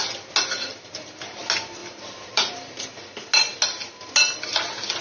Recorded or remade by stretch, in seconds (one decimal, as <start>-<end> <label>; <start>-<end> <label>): 0.0-0.7 recorded; 0.7-1.4 remade; 1.4-1.8 recorded; 1.8-2.8 remade; 2.8-5.0 recorded